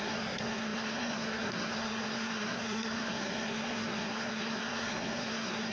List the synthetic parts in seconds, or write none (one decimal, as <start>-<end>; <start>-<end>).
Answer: 0.0-5.7